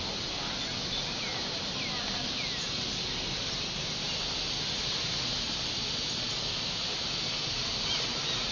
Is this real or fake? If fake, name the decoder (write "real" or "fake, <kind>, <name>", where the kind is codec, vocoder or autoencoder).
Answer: real